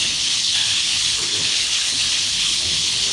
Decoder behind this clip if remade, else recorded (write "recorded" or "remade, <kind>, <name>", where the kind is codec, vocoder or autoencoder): remade, codec, HILCodec